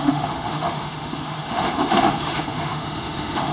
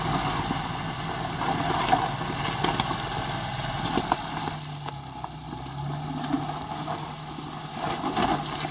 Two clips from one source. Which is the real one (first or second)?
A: second